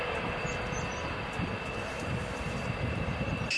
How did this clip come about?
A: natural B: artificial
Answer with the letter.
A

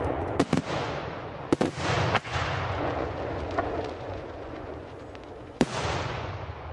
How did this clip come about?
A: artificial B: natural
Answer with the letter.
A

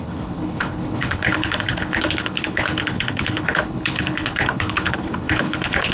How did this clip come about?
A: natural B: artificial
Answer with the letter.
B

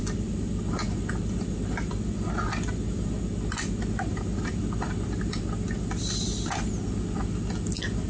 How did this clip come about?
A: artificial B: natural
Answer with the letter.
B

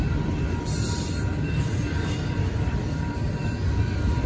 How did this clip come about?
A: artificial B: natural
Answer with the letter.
A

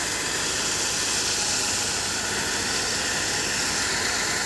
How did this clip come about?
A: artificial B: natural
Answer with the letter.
B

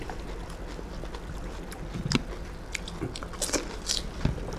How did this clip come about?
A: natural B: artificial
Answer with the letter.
A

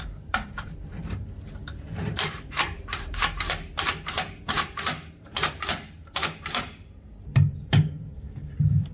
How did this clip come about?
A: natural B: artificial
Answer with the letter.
B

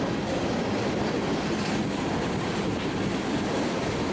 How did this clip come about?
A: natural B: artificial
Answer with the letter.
A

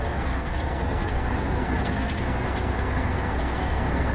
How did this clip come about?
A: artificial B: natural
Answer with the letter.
A